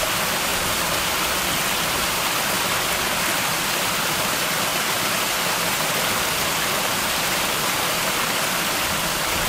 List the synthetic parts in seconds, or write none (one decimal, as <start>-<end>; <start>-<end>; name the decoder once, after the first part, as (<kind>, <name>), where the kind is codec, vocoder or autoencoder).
none